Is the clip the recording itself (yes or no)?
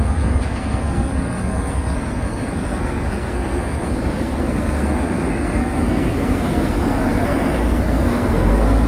no